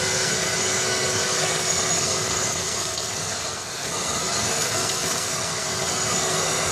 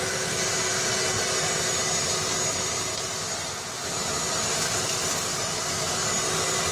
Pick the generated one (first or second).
first